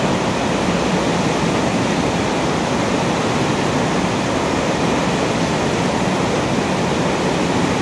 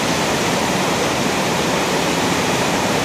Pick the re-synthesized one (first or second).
second